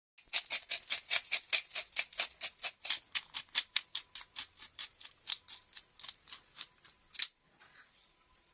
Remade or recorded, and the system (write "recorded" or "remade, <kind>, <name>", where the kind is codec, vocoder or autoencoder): recorded